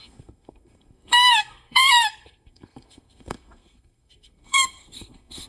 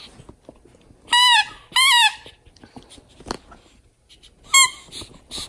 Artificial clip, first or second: first